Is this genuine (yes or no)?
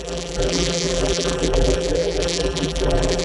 no